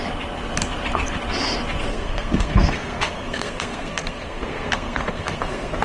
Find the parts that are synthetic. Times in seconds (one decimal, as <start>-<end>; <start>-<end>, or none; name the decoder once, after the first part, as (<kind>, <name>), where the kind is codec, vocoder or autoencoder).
1.9-5.8 (codec, SNAC)